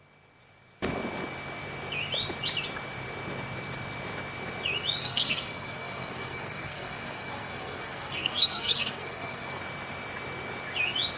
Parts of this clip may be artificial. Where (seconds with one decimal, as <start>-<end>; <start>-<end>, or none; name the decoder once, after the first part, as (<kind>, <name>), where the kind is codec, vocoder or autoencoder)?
5.0-9.6 (codec, SNAC)